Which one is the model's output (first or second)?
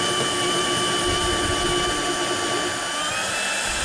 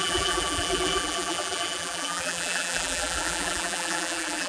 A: second